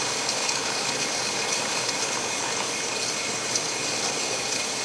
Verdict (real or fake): fake